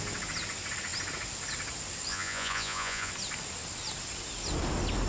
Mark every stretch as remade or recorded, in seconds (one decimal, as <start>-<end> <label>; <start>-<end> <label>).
0.0-2.1 recorded; 2.1-3.1 remade; 3.1-5.1 recorded